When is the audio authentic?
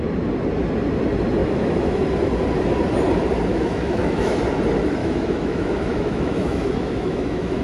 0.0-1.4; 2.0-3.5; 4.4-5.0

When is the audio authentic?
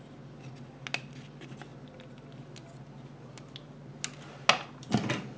0.0-5.4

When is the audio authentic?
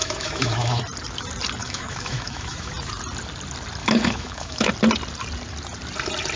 0.8-1.6; 2.7-3.8; 4.7-6.4